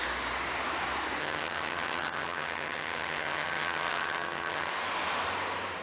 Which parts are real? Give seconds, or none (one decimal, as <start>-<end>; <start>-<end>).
0.0-1.2; 4.7-5.8